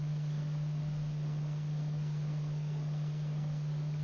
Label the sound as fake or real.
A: fake